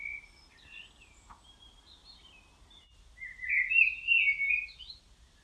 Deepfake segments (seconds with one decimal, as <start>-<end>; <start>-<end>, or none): none

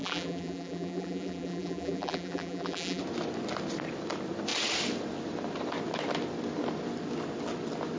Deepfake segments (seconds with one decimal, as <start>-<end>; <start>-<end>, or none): 0.0-3.0